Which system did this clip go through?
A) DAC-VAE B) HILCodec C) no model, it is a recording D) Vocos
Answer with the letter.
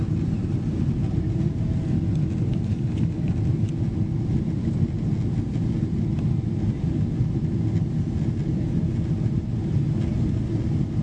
C